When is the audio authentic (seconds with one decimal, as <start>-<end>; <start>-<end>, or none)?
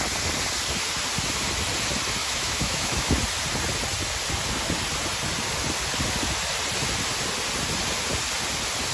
0.0-2.2; 3.2-8.9